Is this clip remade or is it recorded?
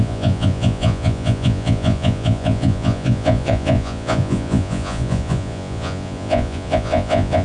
remade